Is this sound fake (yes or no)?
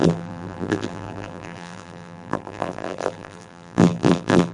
yes